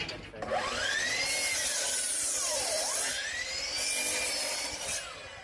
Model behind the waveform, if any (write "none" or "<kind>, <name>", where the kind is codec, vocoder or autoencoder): none